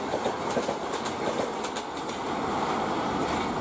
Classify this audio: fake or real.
real